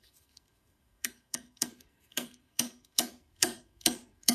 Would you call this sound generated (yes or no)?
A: yes